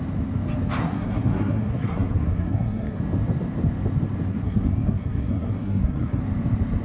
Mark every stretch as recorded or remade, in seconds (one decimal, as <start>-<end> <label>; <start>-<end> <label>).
0.0-0.8 recorded; 0.8-3.0 remade; 3.0-4.3 recorded; 4.3-6.2 remade; 6.2-6.8 recorded